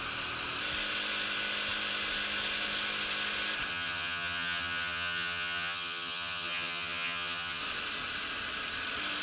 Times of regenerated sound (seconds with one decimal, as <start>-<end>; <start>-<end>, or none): 3.7-7.6